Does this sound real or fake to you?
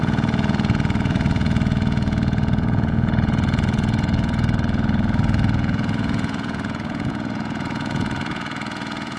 fake